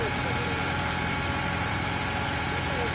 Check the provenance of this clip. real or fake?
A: real